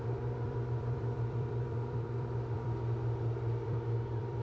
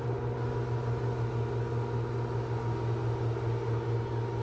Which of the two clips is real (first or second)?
second